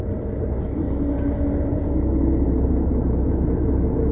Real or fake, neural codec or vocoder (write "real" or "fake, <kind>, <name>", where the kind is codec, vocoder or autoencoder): real